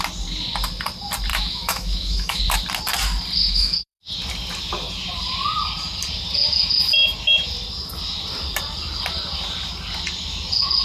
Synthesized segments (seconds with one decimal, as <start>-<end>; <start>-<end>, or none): 1.3-2.4; 3.4-4.0